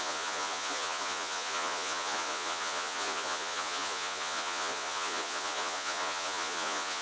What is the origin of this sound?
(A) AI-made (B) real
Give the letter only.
A